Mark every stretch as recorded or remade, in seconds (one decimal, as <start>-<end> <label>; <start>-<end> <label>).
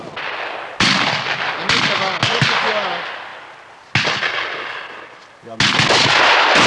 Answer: 0.0-6.7 recorded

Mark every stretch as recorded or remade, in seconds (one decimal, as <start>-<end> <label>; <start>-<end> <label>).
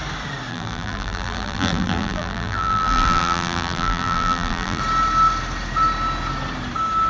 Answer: 0.0-0.5 recorded; 0.5-4.8 remade; 4.8-7.1 recorded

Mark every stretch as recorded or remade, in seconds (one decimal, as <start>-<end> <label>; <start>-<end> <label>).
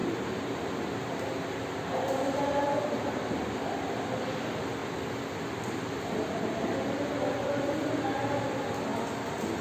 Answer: 0.0-2.2 recorded; 2.2-4.8 remade; 4.8-6.4 recorded; 6.4-9.6 remade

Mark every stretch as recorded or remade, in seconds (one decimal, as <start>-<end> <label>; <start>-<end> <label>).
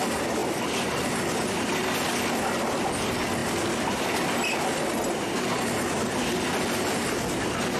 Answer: 0.0-7.8 recorded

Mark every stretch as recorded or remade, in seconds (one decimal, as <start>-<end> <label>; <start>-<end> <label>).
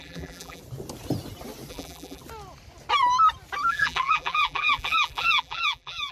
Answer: 0.0-0.6 remade; 0.6-1.7 recorded; 1.7-2.2 remade; 2.2-3.7 recorded; 3.7-6.1 remade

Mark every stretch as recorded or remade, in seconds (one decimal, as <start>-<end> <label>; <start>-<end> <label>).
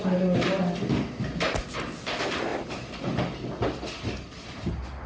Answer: 0.0-5.1 recorded